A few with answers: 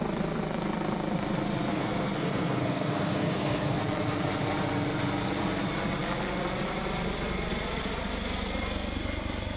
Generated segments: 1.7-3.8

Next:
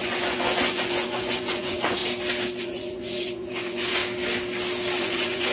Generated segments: 0.0-2.0; 2.6-4.0; 5.0-5.5

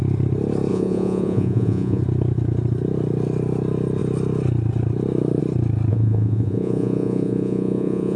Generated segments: 0.7-2.0; 5.9-8.2

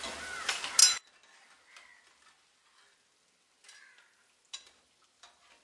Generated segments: none